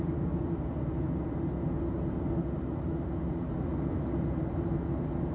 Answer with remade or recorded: recorded